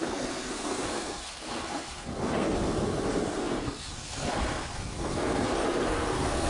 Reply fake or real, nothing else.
fake